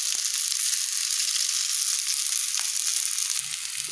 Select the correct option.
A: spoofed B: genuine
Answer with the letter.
B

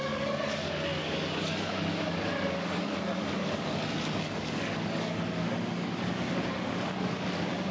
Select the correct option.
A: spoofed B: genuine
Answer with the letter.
A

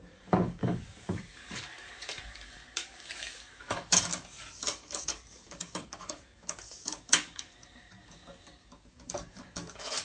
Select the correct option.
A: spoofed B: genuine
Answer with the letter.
A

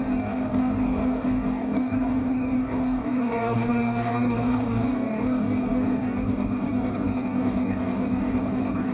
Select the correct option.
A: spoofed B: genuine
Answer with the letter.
A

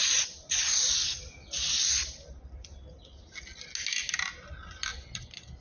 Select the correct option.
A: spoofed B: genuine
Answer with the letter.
B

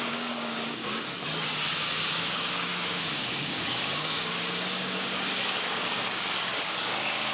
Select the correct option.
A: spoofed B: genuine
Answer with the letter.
A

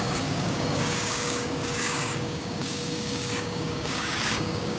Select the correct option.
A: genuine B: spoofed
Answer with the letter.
B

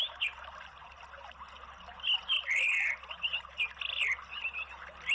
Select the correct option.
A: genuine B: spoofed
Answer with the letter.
A